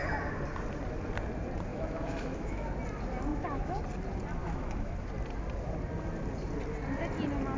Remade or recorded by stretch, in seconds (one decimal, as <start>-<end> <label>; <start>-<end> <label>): 0.0-1.7 recorded; 1.7-2.7 remade; 2.7-3.3 recorded; 3.3-3.8 remade; 3.8-4.4 recorded; 4.4-5.1 remade; 5.1-7.6 recorded

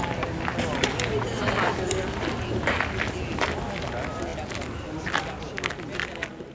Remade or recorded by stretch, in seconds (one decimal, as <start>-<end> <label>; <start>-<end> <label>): 0.0-6.5 recorded

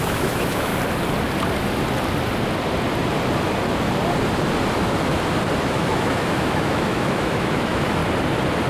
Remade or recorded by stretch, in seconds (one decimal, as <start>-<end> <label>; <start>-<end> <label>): 0.0-0.7 remade; 0.7-5.6 recorded; 5.6-8.0 remade; 8.0-8.7 recorded

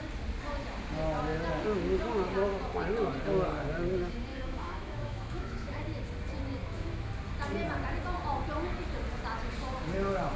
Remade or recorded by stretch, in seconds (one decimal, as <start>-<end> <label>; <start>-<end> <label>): 0.0-4.3 recorded; 4.3-6.0 remade; 6.0-6.6 recorded; 6.6-7.1 remade; 7.1-10.4 recorded

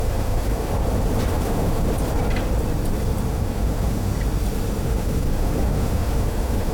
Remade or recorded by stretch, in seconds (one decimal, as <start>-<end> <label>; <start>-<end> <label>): 0.0-0.7 remade; 0.7-1.3 recorded; 1.3-1.9 remade; 1.9-3.3 recorded; 3.3-4.1 remade; 4.1-4.8 recorded; 4.8-6.7 remade